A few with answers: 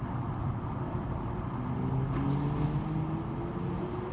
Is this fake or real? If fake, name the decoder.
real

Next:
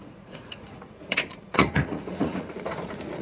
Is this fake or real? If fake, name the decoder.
fake, vocoder, Vocos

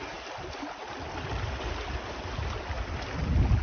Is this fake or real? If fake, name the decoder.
real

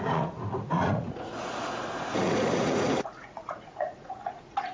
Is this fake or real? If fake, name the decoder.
fake, vocoder, Vocos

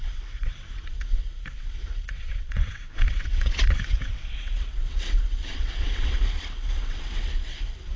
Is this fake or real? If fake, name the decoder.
fake, vocoder, WaveNeXt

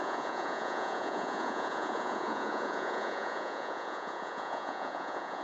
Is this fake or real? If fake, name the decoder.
fake, vocoder, Vocos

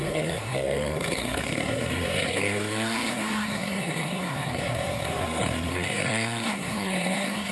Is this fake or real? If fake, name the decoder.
fake, codec, SNAC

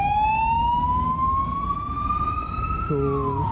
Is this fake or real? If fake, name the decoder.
real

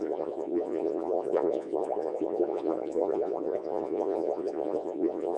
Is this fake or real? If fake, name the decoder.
fake, vocoder, Vocos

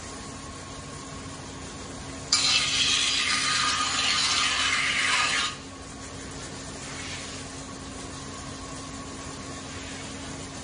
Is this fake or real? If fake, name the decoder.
real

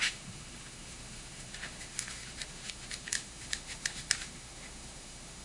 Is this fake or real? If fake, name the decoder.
fake, autoencoder, DAC-VAE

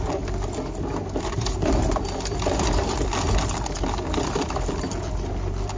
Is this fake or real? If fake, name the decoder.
real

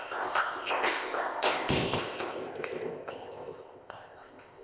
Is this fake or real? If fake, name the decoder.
fake, codec, ZipCodec